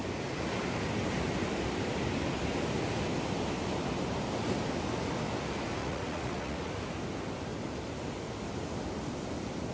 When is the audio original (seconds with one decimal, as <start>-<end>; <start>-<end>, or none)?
0.0-5.8; 6.7-9.7